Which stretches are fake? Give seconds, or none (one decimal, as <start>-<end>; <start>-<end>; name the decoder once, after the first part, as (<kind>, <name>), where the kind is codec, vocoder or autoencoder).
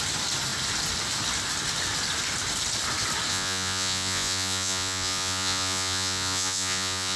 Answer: 3.3-7.2 (vocoder, Vocos)